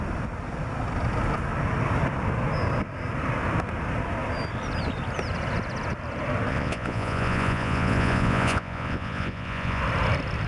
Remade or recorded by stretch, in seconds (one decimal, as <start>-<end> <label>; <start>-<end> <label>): 0.0-6.5 recorded; 6.5-9.8 remade; 9.8-10.5 recorded